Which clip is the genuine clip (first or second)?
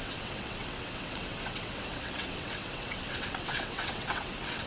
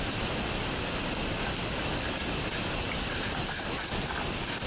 second